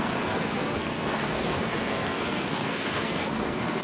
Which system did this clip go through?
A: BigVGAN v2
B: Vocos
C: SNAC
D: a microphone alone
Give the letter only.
C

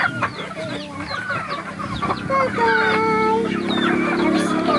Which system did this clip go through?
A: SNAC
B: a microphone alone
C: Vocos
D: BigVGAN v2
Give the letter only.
B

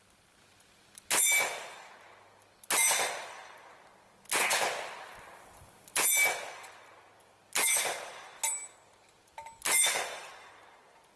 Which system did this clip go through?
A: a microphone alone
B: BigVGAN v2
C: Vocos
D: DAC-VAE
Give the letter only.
A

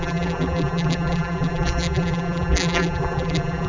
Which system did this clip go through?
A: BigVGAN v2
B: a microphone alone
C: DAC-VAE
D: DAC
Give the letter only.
A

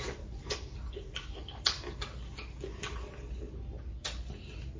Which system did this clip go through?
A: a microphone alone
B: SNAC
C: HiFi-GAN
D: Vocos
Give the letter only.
A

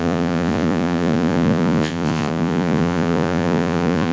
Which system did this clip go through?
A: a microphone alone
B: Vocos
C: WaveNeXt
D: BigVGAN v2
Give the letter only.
B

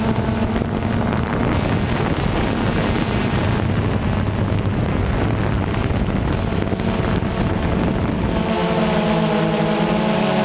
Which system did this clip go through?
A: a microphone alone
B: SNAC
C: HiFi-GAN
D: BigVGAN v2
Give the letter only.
A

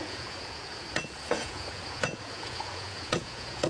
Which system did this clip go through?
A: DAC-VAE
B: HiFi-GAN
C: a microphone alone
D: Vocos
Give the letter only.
D